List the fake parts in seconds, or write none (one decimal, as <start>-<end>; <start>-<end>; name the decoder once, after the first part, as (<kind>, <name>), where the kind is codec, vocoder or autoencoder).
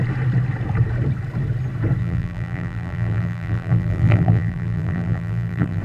2.0-5.8 (vocoder, BigVGAN v2)